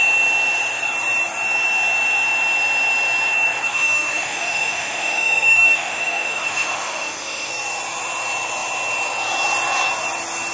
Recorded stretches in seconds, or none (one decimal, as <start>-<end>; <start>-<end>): 0.0-3.7; 7.5-10.5